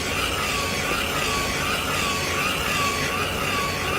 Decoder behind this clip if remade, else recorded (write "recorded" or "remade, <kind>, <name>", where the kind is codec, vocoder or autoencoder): recorded